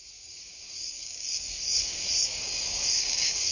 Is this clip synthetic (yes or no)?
yes